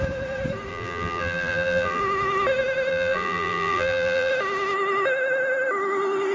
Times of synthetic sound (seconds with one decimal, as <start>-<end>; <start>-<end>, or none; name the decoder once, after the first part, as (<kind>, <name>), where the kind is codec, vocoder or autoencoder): 0.7-2.0 (vocoder, BigVGAN v2); 2.9-4.3